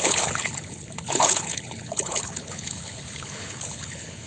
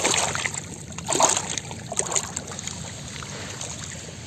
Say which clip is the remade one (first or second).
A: first